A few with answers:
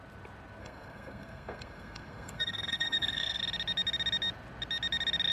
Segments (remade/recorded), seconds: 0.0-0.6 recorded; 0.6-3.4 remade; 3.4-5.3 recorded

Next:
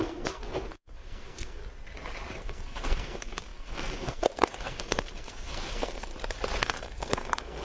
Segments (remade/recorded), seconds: 0.0-1.6 remade; 1.6-2.3 recorded; 2.3-6.1 remade; 6.1-6.6 recorded; 6.6-7.6 remade

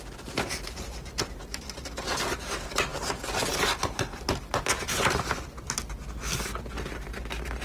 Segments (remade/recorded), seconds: 0.0-7.6 recorded